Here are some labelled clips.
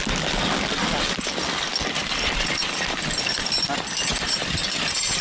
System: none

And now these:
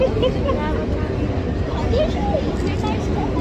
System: none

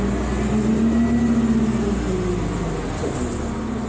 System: none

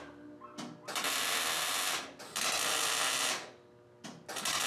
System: none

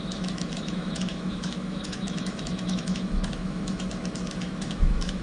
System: autoencoder, DAC-VAE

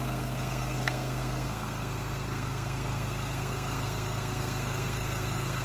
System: codec, SNAC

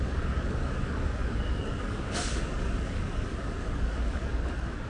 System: codec, DAC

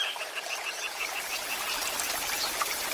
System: vocoder, BigVGAN v2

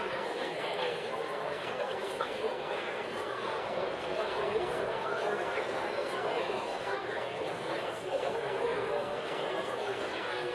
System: codec, SNAC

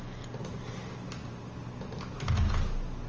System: none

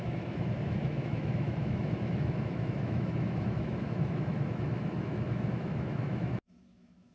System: autoencoder, DAC-VAE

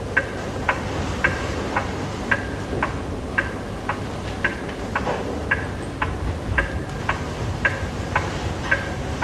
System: none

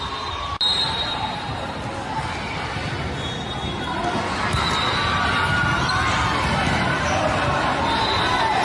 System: none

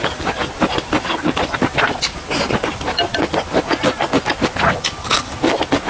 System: none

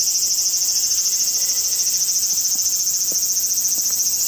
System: none